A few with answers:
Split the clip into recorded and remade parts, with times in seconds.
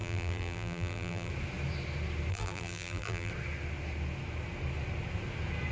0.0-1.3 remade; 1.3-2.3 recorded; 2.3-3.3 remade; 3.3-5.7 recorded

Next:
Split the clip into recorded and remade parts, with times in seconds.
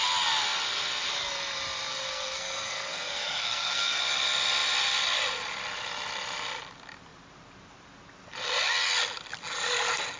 0.0-1.9 recorded; 1.9-4.0 remade; 4.0-10.2 recorded